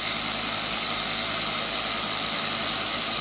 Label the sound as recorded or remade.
recorded